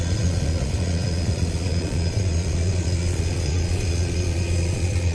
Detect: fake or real fake